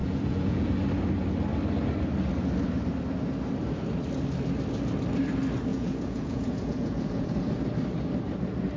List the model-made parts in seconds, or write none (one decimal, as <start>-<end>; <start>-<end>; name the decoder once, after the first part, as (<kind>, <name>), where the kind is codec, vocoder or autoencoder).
0.0-0.7 (vocoder, Vocos); 5.7-7.5